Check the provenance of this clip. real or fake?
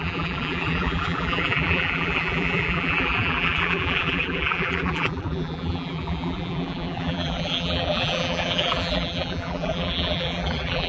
fake